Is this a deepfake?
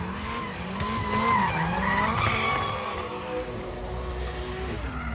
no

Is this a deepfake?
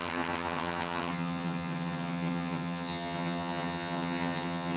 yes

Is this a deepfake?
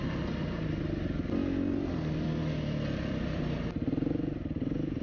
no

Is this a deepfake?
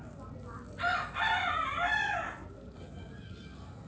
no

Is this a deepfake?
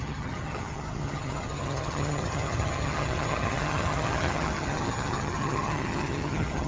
yes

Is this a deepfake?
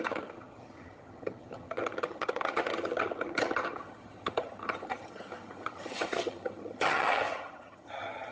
yes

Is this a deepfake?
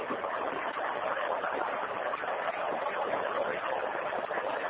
no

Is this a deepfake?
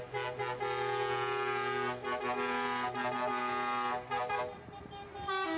no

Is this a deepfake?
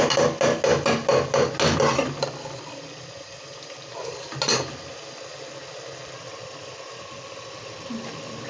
no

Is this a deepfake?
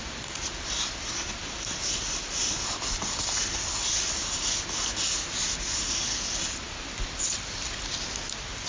no